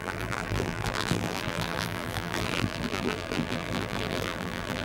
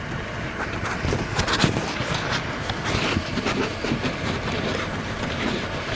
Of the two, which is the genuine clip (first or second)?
second